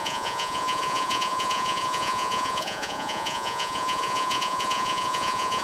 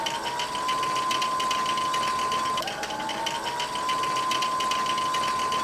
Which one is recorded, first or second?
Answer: second